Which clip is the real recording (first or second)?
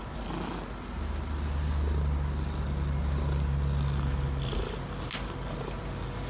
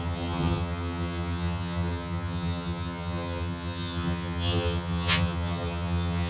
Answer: first